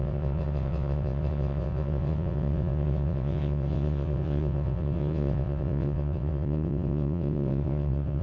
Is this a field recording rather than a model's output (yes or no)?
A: no